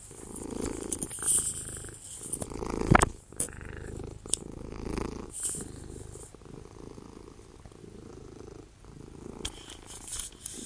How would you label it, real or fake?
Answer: real